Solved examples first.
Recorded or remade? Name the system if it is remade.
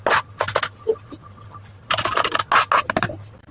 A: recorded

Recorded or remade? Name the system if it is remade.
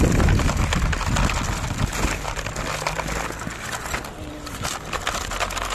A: recorded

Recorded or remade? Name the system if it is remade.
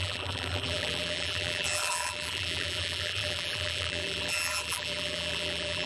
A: remade, vocoder, BigVGAN v2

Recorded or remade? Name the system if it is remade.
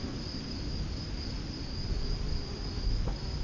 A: recorded